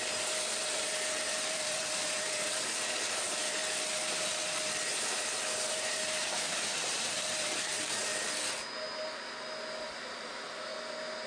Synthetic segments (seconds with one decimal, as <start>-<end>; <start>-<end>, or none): 0.0-3.6; 5.7-8.1; 9.8-10.7